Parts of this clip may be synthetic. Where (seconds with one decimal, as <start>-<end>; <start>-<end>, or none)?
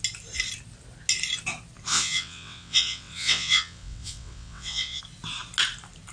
1.9-5.0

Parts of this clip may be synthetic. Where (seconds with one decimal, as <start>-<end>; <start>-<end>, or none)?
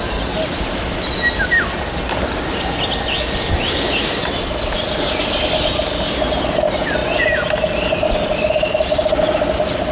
none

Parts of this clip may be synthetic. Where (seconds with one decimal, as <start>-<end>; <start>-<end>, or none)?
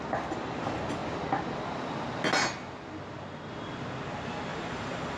4.5-5.2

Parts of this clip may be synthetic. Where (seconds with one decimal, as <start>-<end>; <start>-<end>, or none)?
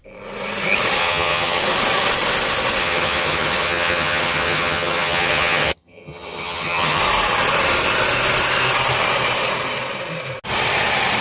1.0-1.6; 2.8-7.0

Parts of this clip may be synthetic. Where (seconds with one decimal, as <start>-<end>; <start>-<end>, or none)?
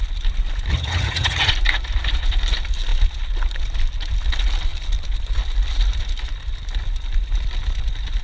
0.7-1.5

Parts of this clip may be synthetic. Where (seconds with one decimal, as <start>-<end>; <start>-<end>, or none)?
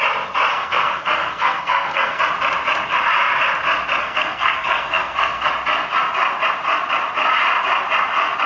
0.5-2.2; 4.0-5.5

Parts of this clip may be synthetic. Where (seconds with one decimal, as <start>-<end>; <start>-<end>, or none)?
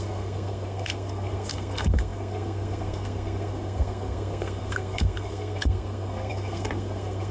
0.0-7.3